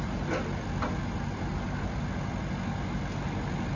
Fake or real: real